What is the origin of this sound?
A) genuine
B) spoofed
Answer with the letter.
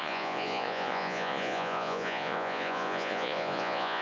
B